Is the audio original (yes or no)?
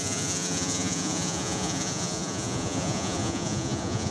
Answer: no